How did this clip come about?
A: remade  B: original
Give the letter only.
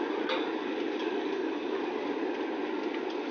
B